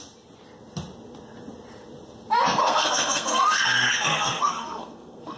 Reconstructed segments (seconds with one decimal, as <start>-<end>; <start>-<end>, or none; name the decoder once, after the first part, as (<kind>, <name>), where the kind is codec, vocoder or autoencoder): 2.6-5.4 (codec, SNAC)